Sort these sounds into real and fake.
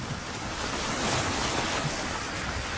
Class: real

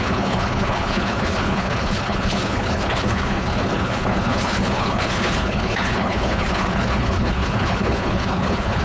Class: fake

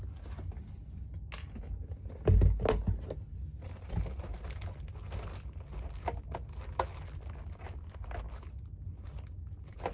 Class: real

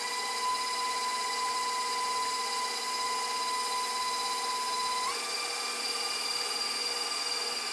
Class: real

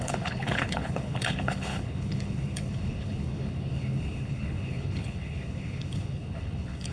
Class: fake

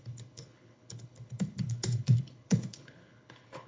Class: fake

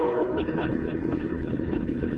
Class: fake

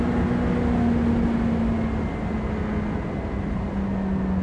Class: real